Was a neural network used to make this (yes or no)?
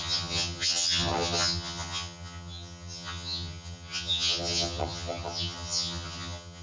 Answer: yes